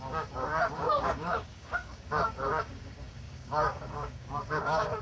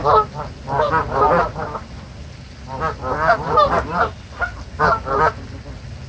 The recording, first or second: second